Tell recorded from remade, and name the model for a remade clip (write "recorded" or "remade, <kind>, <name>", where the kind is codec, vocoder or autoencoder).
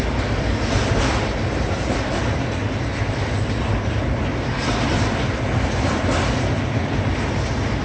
recorded